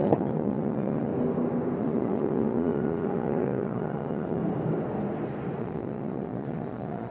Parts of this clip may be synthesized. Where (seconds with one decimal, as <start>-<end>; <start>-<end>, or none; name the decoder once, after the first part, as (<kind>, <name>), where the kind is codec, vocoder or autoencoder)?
0.0-1.1 (vocoder, Vocos); 1.8-4.4; 5.6-7.1